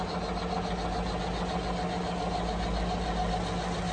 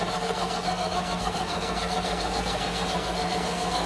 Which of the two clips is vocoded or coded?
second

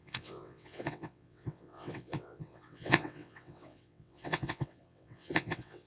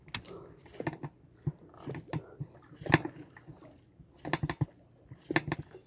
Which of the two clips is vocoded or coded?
first